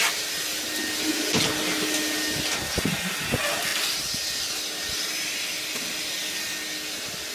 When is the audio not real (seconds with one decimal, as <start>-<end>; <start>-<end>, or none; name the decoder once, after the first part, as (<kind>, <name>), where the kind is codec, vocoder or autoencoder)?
3.7-4.5 (vocoder, BigVGAN v2)